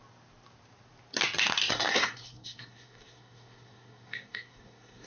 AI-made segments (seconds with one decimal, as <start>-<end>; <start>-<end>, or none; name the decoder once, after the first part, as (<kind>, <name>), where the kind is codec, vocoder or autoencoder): 1.7-5.1 (codec, SNAC)